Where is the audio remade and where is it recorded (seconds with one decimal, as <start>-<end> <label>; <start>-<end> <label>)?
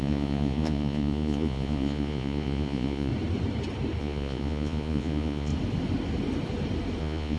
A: 0.0-3.1 remade; 3.1-4.0 recorded; 4.0-5.5 remade; 5.5-7.0 recorded; 7.0-7.4 remade